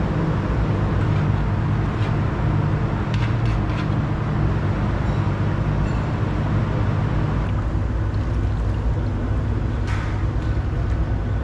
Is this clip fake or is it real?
real